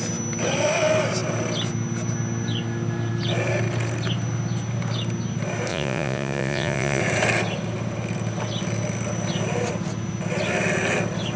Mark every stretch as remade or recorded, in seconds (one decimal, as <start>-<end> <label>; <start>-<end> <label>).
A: 0.0-5.7 recorded; 5.7-7.0 remade; 7.0-11.4 recorded